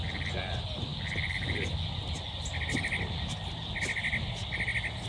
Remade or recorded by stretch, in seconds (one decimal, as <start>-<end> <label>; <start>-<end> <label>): 0.0-5.1 recorded